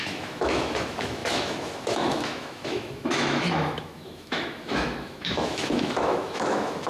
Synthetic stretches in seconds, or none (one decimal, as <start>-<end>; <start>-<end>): 0.0-6.9